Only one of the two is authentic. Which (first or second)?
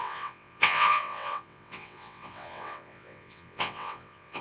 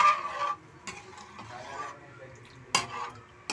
second